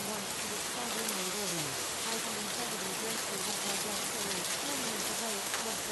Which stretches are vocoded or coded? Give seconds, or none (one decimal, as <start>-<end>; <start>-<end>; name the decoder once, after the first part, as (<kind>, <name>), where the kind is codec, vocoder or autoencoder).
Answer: 1.1-2.1 (autoencoder, DAC-VAE); 5.1-5.9